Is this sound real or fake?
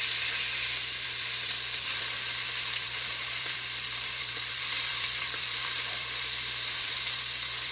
fake